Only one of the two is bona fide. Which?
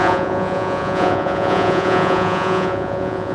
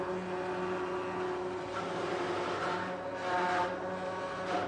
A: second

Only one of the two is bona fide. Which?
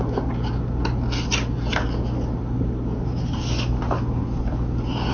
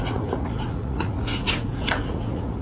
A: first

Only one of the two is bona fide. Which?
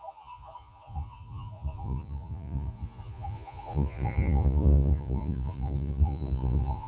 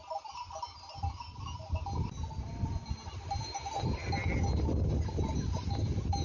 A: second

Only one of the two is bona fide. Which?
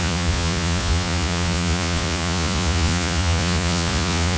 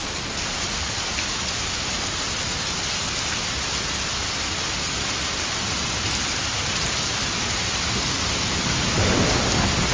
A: second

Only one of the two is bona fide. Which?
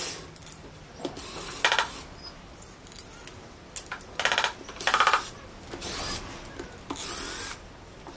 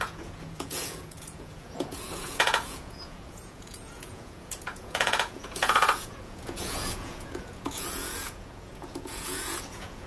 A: first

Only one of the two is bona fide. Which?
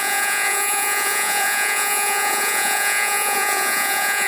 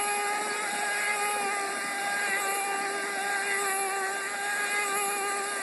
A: second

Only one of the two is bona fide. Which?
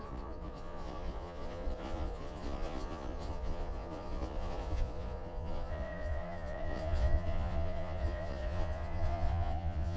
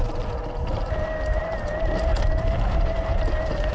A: second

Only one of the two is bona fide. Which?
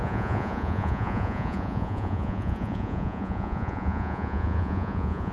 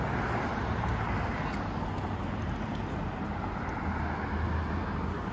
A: second